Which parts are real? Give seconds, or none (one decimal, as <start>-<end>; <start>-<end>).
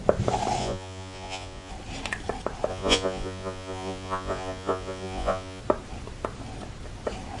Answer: 0.0-0.6; 1.7-2.7; 5.6-7.4